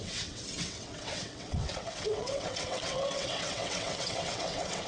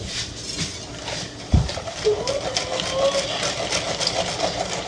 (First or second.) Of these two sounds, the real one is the second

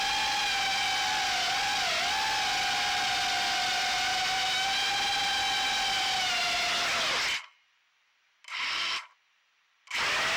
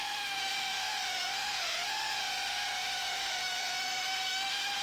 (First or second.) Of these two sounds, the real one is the first